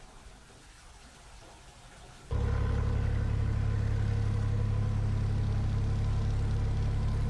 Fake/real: real